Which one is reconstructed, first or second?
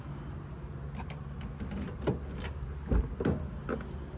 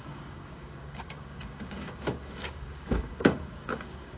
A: second